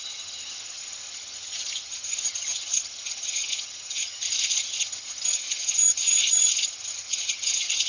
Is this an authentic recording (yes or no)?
no